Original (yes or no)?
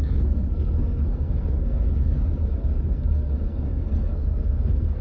no